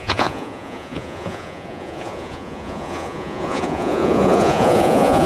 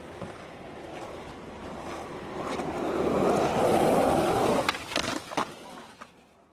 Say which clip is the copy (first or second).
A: first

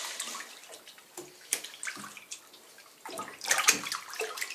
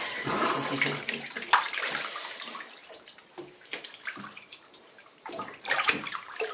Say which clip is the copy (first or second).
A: second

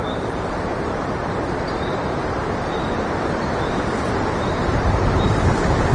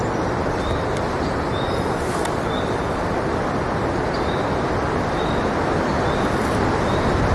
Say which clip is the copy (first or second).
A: first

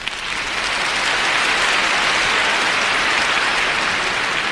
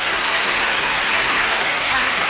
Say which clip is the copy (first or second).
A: second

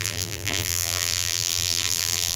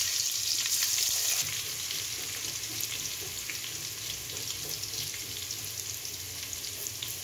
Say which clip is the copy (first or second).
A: first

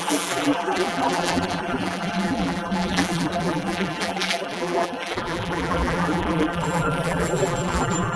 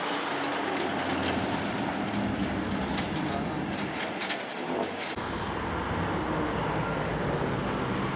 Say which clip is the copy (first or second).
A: first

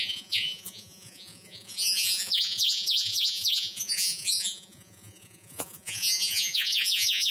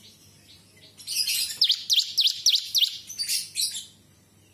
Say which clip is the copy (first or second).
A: first